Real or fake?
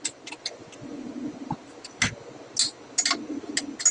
real